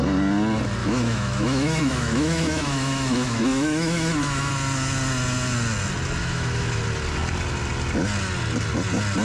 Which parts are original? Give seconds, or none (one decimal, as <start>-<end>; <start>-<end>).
0.0-0.8; 4.5-6.2; 6.8-9.2